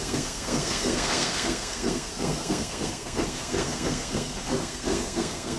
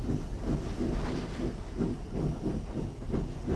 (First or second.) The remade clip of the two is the first